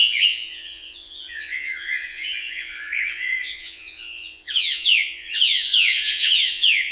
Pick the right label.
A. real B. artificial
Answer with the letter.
B